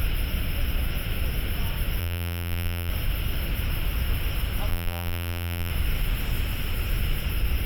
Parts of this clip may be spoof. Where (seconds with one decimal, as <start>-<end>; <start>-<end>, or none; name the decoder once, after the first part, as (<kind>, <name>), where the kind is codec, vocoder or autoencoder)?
2.0-2.9 (vocoder, BigVGAN v2); 4.7-5.7